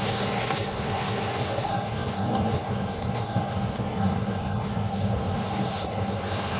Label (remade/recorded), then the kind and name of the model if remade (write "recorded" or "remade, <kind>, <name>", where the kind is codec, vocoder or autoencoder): remade, codec, SNAC